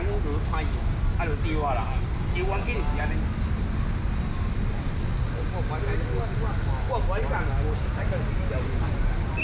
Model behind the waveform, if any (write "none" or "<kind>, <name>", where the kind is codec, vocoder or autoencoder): none